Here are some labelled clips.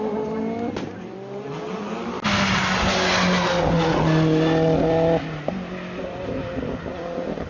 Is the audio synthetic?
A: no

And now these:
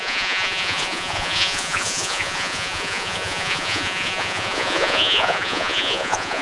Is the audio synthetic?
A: yes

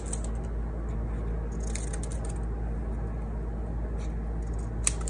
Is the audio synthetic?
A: no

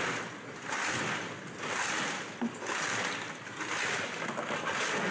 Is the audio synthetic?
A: no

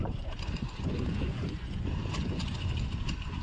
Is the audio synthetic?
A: yes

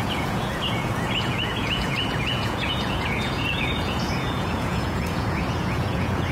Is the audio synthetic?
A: yes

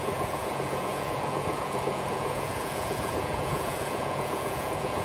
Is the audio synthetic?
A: yes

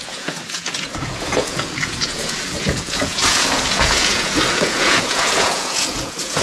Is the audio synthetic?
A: yes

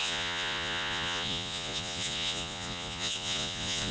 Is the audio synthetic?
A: yes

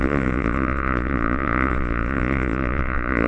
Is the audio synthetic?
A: yes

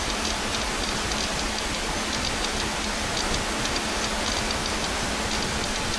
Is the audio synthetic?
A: no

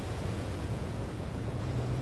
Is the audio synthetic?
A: yes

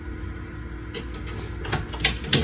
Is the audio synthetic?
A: no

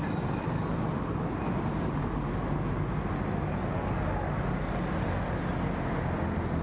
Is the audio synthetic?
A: no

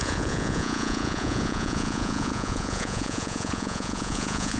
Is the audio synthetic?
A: yes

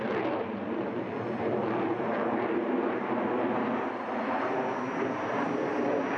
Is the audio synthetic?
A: no